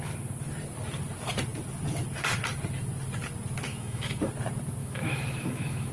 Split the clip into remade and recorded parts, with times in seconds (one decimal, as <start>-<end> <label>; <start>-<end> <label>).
0.0-3.7 recorded; 3.7-4.3 remade; 4.3-4.8 recorded; 4.8-5.9 remade